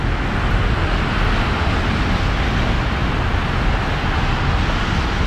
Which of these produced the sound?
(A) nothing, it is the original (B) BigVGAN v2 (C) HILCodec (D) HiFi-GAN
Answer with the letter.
A